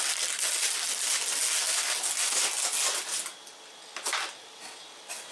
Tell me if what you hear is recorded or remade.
recorded